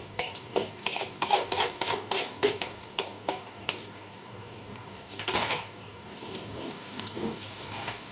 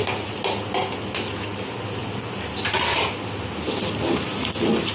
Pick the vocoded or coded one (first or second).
first